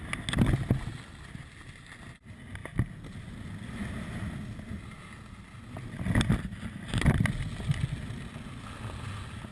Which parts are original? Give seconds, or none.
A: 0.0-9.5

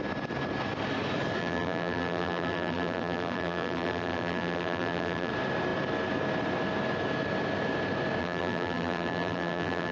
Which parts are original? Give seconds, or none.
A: 0.0-1.4; 5.3-8.2